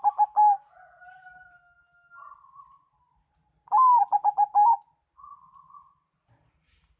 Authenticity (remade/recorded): recorded